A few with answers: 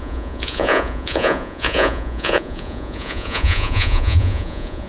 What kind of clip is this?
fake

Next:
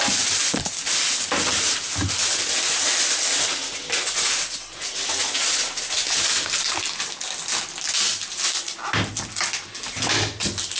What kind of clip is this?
real